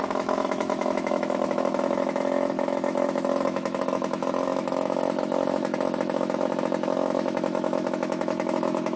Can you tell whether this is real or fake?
fake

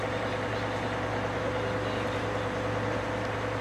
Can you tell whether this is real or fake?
real